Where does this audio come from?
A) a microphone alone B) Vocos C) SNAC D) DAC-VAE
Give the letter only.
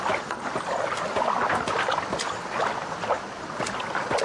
A